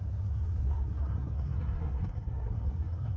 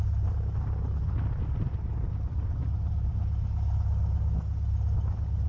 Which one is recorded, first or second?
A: second